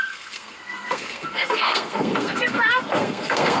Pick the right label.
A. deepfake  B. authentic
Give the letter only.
A